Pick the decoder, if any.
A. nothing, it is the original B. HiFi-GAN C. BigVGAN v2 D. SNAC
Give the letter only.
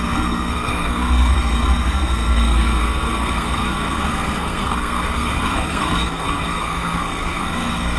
D